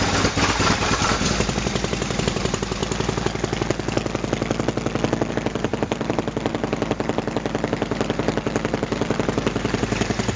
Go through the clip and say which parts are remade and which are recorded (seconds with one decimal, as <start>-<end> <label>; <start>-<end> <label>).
0.0-2.8 remade; 2.8-5.3 recorded; 5.3-10.4 remade